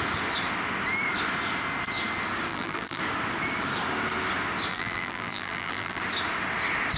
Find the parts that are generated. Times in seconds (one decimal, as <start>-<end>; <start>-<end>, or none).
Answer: 2.5-3.0; 4.7-6.0